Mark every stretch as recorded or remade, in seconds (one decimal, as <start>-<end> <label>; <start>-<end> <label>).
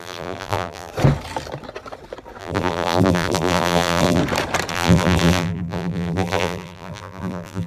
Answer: 0.0-0.9 remade; 0.9-2.4 recorded; 2.4-4.2 remade; 4.2-4.7 recorded; 4.7-7.7 remade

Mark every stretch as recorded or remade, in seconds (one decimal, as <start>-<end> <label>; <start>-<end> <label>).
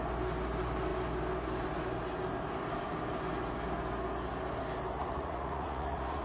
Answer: 0.0-5.0 recorded; 5.0-6.2 remade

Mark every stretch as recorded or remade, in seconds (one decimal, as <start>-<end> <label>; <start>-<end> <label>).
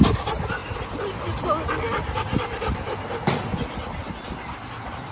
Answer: 0.0-0.6 recorded; 0.6-3.7 remade; 3.7-5.1 recorded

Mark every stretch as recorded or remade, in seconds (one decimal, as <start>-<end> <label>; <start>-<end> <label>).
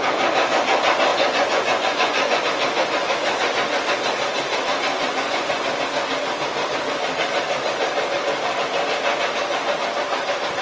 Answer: 0.0-1.1 recorded; 1.1-2.4 remade; 2.4-4.9 recorded; 4.9-5.8 remade; 5.8-10.6 recorded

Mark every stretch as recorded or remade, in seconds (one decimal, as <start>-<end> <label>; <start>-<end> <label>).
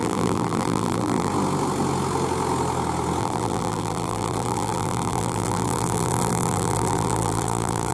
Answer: 0.0-1.3 remade; 1.3-3.2 recorded; 3.2-7.9 remade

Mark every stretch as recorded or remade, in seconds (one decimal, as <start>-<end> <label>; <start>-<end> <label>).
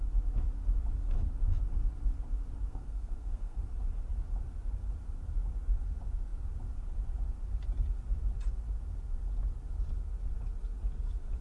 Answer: 0.0-2.7 recorded; 2.7-3.6 remade; 3.6-11.4 recorded